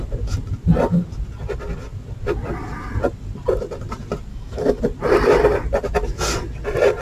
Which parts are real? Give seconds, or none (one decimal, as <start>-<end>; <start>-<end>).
0.0-4.3; 4.8-7.0